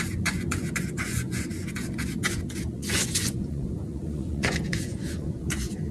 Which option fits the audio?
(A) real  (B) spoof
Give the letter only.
B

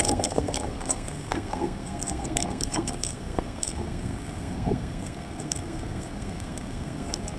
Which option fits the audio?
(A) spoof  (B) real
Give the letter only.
A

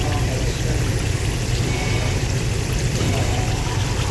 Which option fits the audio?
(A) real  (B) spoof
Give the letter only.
B